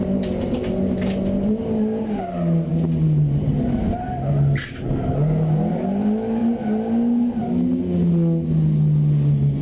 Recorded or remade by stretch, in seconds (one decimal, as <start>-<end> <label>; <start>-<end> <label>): 0.0-9.6 recorded